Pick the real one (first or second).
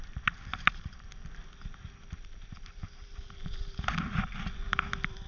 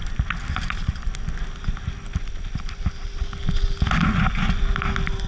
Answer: second